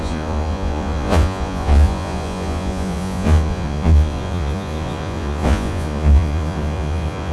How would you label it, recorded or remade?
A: remade